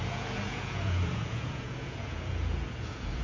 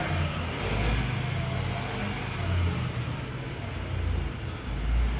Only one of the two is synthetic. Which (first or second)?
first